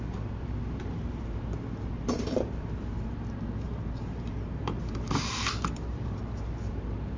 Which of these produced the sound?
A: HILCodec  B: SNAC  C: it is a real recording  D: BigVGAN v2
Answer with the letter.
D